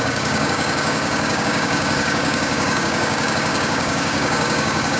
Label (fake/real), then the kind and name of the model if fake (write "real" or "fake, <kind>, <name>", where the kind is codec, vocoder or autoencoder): fake, codec, DAC